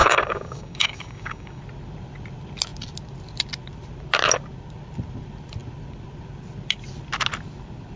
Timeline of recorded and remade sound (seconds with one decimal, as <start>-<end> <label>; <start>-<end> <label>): 0.0-1.6 remade; 1.6-8.0 recorded